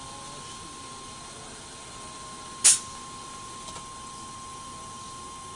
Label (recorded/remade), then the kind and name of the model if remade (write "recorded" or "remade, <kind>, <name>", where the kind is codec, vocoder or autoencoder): recorded